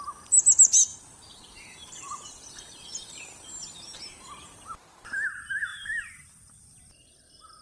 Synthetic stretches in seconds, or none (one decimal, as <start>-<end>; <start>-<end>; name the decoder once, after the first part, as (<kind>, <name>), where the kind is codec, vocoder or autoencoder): 0.9-4.2 (vocoder, BigVGAN v2); 5.7-6.8